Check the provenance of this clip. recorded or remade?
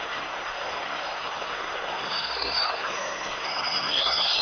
remade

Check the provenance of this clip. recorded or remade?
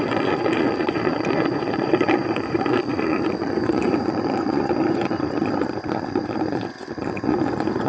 remade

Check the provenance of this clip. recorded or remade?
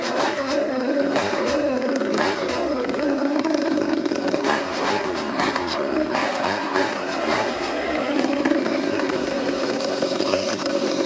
remade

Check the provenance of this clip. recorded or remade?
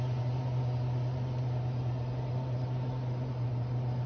recorded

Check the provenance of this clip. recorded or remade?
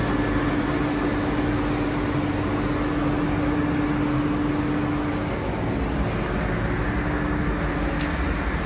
recorded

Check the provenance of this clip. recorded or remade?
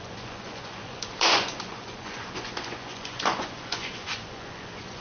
remade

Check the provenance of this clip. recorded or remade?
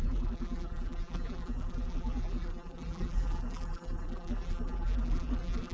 remade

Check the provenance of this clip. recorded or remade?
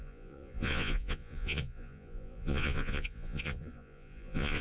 remade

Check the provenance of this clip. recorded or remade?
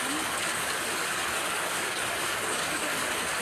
remade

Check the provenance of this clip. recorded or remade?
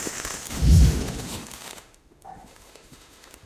remade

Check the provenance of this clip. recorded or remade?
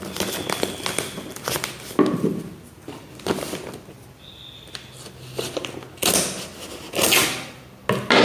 recorded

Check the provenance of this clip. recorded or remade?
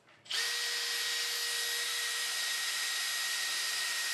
recorded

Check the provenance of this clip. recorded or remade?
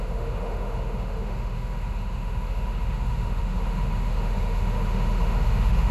remade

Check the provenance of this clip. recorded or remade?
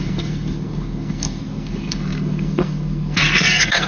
remade